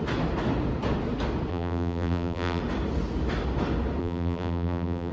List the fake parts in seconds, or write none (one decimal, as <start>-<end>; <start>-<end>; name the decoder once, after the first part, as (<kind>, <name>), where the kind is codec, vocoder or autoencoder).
1.5-2.6 (vocoder, BigVGAN v2); 4.0-5.1